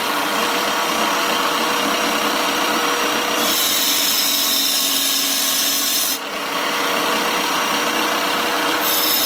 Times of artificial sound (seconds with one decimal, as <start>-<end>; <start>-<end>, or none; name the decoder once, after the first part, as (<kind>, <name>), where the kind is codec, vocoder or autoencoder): 0.0-9.3 (vocoder, BigVGAN v2)